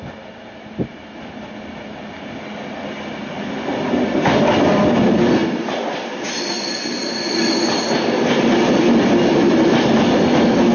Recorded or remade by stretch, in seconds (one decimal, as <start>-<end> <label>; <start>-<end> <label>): 0.0-10.7 recorded